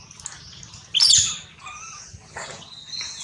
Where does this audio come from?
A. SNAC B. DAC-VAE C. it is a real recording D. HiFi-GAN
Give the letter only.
C